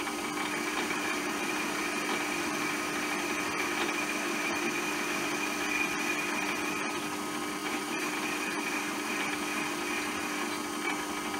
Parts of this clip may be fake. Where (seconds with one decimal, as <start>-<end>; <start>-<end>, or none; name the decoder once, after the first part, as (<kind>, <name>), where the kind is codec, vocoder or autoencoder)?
0.7-1.8 (vocoder, BigVGAN v2); 7.6-9.3